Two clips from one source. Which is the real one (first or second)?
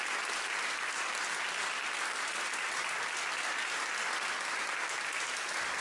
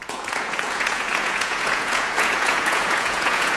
first